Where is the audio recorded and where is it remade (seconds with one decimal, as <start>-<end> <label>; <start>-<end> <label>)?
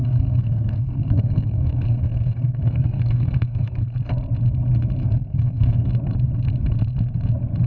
0.0-3.8 remade; 3.8-5.0 recorded; 5.0-5.9 remade; 5.9-7.7 recorded